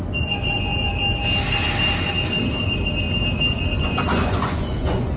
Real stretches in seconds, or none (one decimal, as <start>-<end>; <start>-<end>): 0.9-3.5